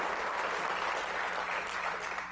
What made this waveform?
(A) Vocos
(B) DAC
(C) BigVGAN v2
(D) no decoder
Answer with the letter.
C